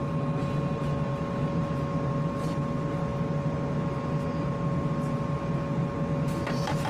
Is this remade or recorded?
recorded